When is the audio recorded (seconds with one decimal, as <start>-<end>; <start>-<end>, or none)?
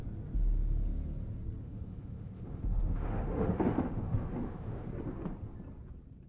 0.0-1.6; 4.9-6.3